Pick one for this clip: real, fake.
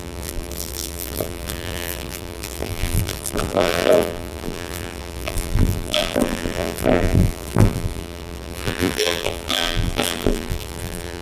fake